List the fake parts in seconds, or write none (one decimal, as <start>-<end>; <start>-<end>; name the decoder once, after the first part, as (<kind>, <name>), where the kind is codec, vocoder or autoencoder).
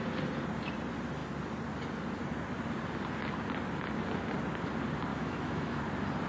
5.1-5.8 (autoencoder, DAC-VAE)